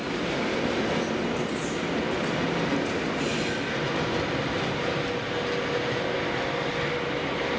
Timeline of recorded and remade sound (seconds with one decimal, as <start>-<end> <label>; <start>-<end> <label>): 0.0-7.6 recorded